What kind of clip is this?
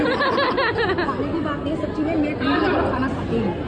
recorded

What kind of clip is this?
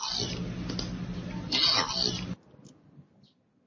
recorded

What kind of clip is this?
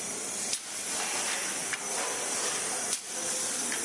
recorded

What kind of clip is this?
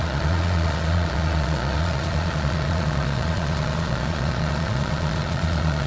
remade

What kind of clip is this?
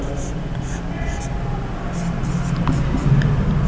recorded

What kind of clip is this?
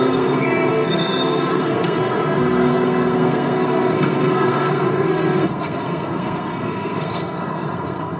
remade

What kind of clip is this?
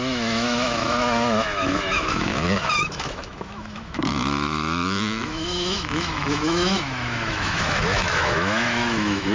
remade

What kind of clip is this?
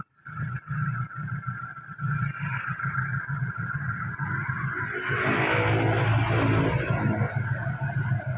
recorded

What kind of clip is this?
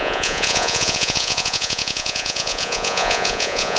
remade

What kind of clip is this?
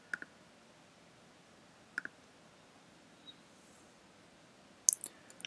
recorded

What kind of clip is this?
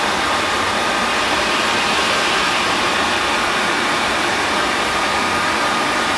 remade